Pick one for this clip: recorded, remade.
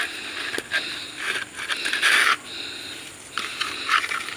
recorded